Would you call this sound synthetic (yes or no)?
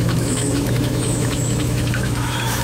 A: yes